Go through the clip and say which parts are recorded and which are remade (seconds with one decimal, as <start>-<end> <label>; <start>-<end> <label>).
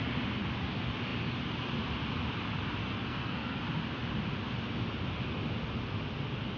0.0-2.8 recorded; 2.8-3.6 remade; 3.6-6.6 recorded